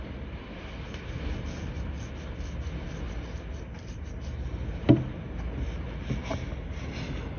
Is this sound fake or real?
real